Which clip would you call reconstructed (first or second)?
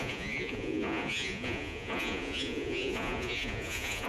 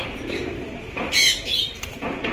first